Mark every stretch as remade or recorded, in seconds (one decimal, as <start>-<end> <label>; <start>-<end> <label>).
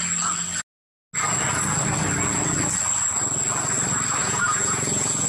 0.0-4.2 recorded; 4.2-5.3 remade